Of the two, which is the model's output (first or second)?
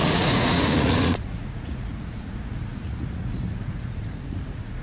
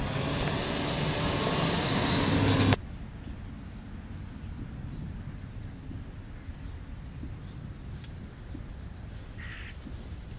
first